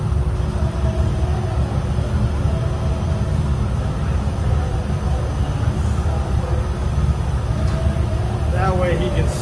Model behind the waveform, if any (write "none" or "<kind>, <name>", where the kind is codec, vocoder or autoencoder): none